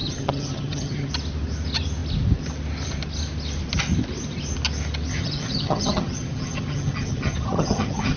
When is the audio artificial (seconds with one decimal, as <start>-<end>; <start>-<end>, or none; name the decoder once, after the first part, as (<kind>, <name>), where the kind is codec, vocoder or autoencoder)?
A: 0.0-1.1 (vocoder, HiFi-GAN); 5.1-8.2